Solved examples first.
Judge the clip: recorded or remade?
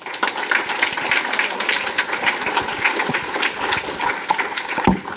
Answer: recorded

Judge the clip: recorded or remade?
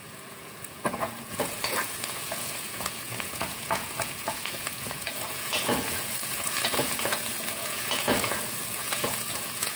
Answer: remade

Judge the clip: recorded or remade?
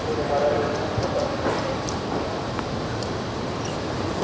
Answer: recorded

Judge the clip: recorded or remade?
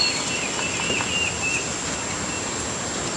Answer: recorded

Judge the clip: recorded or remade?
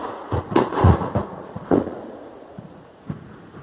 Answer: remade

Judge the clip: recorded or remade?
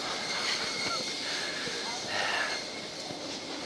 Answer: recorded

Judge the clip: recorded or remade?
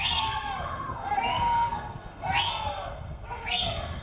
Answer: remade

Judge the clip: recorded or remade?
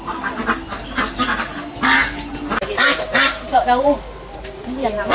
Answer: recorded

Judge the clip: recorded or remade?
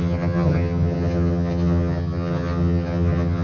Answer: remade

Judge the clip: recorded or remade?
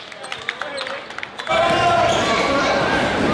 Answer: remade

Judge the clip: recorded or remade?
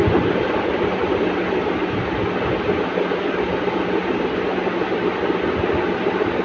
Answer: recorded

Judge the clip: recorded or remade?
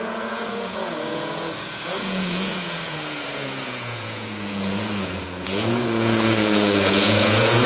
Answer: remade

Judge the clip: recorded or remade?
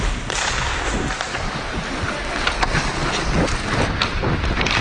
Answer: recorded